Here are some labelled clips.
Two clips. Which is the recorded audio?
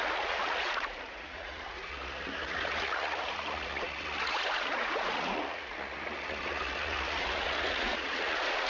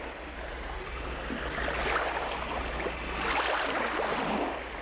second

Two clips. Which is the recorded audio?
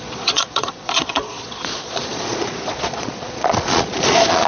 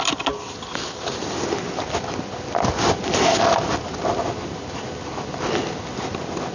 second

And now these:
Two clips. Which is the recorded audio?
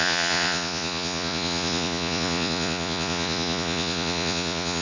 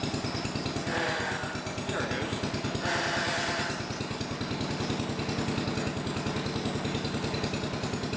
second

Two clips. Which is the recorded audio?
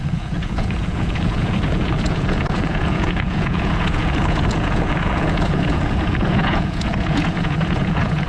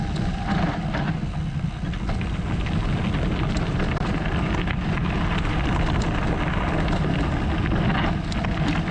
second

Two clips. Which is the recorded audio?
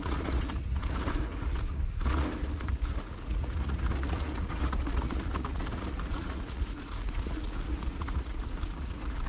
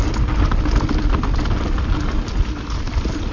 second